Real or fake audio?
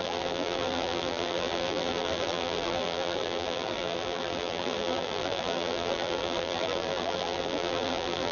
fake